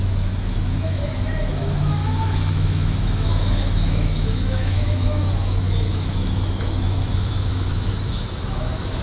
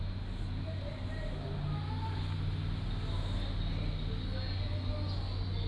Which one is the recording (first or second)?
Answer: second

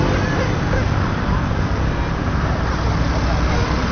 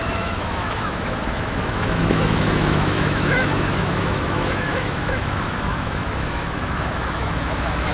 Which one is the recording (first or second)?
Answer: first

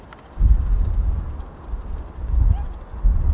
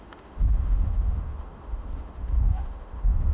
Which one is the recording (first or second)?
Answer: first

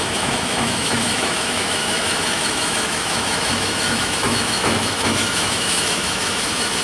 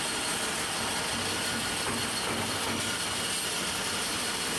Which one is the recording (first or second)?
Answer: second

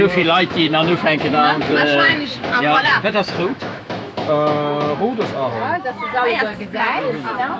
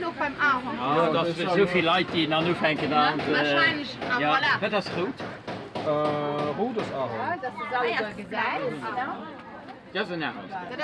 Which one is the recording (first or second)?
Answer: second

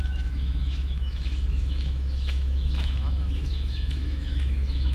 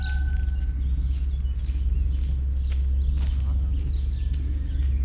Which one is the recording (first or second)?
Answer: second